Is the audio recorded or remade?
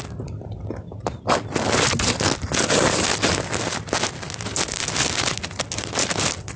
recorded